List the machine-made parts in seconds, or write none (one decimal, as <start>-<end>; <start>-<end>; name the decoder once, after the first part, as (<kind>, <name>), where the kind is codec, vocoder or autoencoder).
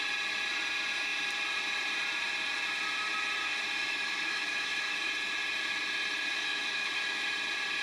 3.4-5.1 (autoencoder, DAC-VAE); 6.3-7.2